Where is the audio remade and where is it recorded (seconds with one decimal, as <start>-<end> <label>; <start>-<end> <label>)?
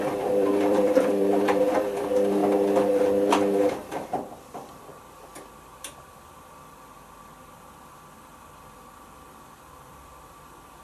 0.0-2.4 remade; 2.4-3.3 recorded; 3.3-10.8 remade